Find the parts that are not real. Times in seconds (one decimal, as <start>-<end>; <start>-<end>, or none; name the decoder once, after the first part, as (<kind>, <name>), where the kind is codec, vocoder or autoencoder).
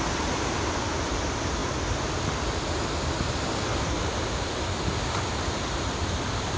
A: none